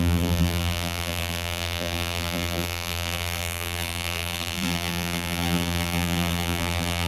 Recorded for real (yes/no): no